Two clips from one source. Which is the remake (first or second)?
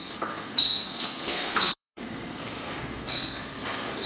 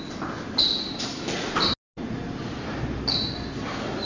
first